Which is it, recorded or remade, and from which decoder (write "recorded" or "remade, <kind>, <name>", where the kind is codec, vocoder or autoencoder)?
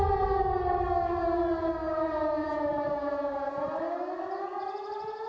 recorded